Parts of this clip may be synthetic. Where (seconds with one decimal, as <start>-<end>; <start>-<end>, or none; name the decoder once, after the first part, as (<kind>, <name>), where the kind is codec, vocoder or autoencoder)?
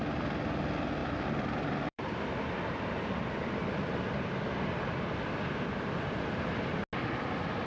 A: 1.0-2.2 (vocoder, BigVGAN v2)